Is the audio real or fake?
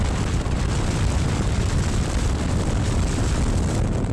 fake